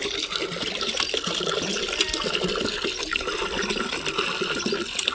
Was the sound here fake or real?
real